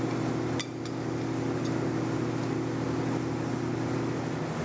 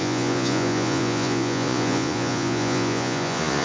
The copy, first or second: second